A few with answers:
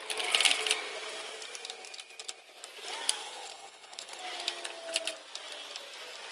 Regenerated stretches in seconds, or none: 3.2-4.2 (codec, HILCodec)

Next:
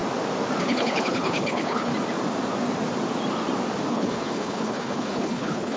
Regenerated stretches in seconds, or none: 0.6-1.9 (codec, HILCodec); 3.9-5.8

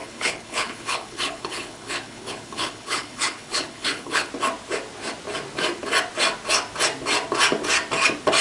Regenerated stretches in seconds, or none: 0.0-4.3 (codec, HILCodec)

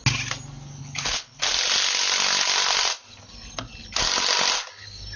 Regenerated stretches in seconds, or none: 0.8-1.4 (codec, HILCodec)

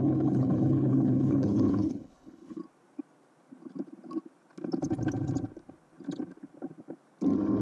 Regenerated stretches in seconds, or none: 0.0-2.6 (codec, HILCodec)